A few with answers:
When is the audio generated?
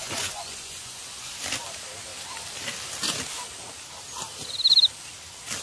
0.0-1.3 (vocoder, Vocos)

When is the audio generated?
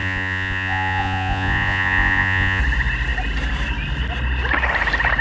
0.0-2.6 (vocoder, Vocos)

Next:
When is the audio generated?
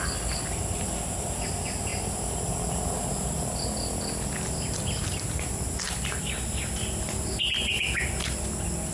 none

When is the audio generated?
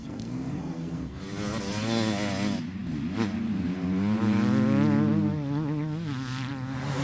0.0-1.2 (codec, SNAC)